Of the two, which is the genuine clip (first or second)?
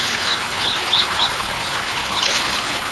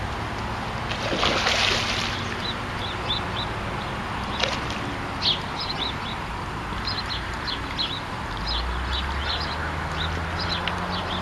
second